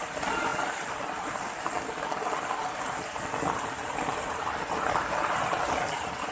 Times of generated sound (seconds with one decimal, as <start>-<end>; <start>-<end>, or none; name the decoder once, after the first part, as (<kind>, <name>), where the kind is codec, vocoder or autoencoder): none